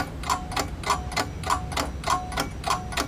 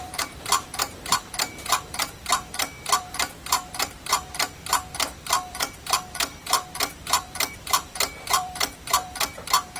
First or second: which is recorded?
first